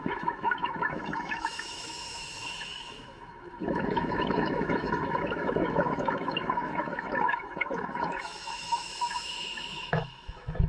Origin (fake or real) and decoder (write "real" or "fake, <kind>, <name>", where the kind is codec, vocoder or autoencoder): fake, autoencoder, DAC-VAE